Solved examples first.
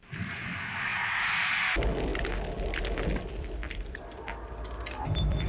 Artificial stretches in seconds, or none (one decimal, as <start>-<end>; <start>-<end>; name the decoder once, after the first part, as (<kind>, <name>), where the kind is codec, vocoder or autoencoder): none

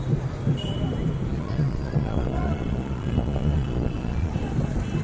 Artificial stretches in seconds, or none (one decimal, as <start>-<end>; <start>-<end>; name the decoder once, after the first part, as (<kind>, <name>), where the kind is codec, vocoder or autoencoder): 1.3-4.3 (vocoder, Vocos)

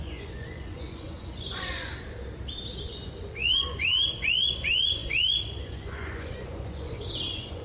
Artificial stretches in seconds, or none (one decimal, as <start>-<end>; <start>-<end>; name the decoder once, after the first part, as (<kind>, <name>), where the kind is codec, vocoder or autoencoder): 0.0-1.9 (vocoder, Vocos); 2.9-7.6